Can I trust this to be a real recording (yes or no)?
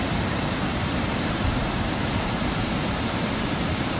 no